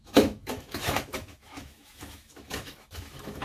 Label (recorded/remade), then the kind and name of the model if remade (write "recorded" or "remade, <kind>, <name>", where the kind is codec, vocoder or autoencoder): remade, autoencoder, DAC-VAE